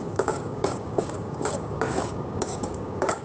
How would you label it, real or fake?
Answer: fake